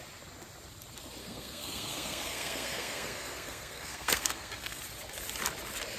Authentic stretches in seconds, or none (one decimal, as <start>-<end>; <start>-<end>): 0.0-1.2; 4.8-6.0